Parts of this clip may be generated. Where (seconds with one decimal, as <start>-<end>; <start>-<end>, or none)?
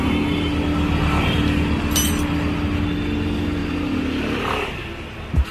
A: none